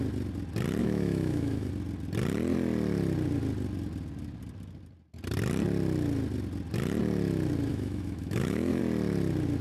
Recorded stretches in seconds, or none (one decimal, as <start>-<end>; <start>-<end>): 0.0-0.8; 1.7-7.7; 8.8-9.6